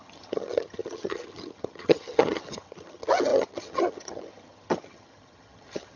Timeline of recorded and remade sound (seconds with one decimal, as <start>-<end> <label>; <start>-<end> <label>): 0.0-6.0 remade